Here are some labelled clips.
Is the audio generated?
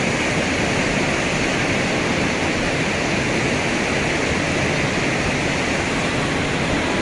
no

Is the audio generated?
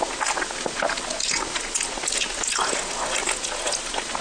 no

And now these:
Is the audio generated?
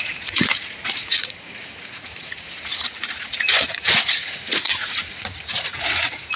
yes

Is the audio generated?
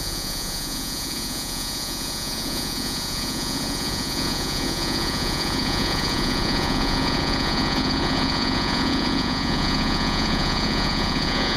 yes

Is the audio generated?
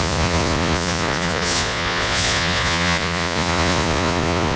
yes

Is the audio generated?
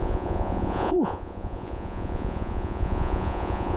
yes